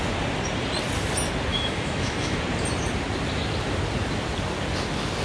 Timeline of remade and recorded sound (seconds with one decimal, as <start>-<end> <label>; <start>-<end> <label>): 0.0-1.5 recorded; 1.5-2.4 remade; 2.4-5.2 recorded